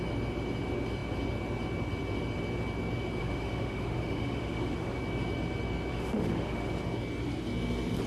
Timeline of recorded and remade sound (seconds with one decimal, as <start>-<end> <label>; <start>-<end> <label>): 0.0-3.2 recorded; 3.2-5.0 remade; 5.0-5.9 recorded; 5.9-6.7 remade; 6.7-8.1 recorded